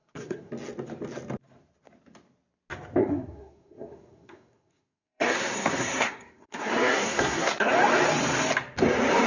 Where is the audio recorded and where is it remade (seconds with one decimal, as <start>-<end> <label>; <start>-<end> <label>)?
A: 0.0-0.5 remade; 0.5-3.0 recorded; 3.0-7.7 remade; 7.7-9.3 recorded

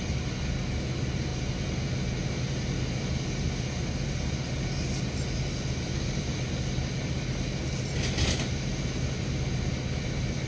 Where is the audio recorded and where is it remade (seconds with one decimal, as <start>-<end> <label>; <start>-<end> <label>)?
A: 0.0-10.5 recorded

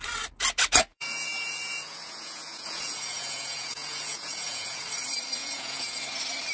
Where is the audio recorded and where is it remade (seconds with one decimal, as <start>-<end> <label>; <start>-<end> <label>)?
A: 0.0-0.9 recorded; 0.9-4.8 remade; 4.8-5.4 recorded; 5.4-6.0 remade; 6.0-6.5 recorded

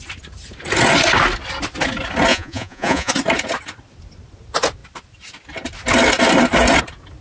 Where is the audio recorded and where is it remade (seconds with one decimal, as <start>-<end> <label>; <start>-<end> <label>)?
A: 0.0-2.3 recorded; 2.3-3.1 remade; 3.1-7.2 recorded

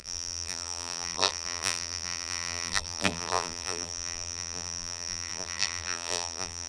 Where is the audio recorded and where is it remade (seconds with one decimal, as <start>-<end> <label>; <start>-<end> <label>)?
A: 0.0-6.7 remade

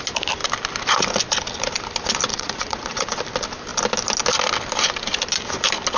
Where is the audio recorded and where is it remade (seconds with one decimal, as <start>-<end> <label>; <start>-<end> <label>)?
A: 0.0-2.3 recorded; 2.3-3.2 remade; 3.2-6.0 recorded